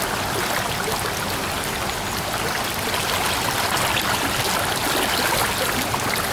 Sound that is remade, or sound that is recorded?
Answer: recorded